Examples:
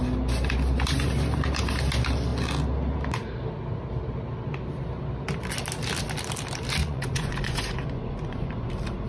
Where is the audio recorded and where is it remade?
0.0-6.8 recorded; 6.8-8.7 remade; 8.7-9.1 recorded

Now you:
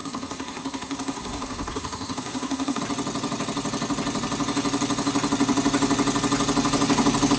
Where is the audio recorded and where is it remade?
0.0-2.8 remade; 2.8-7.4 recorded

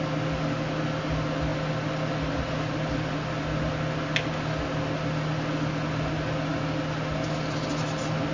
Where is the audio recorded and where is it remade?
0.0-8.3 recorded

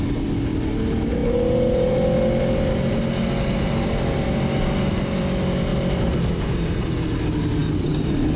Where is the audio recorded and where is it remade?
0.0-8.4 recorded